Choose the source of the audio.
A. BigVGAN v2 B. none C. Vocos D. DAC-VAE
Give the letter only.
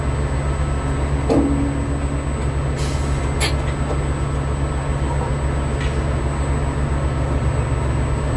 B